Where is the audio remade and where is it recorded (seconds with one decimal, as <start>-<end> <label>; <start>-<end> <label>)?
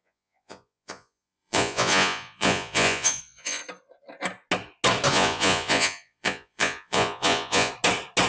0.0-3.6 remade; 3.6-5.1 recorded; 5.1-7.7 remade; 7.7-8.3 recorded